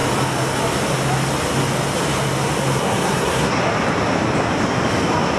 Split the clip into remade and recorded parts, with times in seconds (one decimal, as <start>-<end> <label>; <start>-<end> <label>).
0.0-2.8 recorded; 2.8-3.6 remade; 3.6-5.4 recorded